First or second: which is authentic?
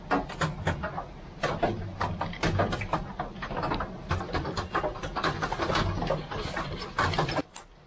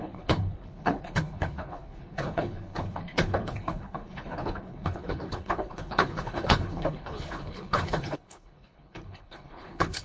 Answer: first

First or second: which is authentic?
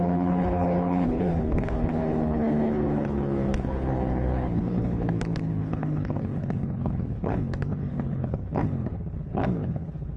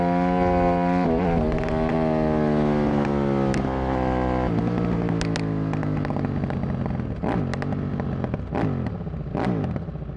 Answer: second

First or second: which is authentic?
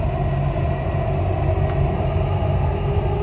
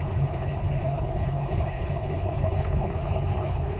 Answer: first